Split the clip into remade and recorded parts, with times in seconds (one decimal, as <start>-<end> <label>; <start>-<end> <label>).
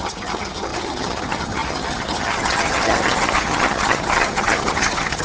0.0-5.2 remade